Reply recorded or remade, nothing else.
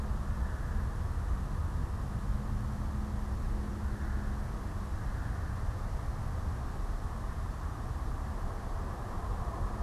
recorded